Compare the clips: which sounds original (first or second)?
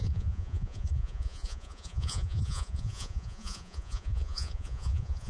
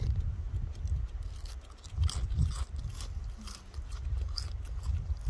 second